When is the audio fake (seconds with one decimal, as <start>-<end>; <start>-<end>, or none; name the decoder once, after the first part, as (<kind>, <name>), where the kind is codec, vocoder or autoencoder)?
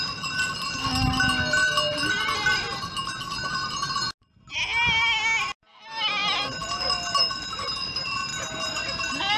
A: none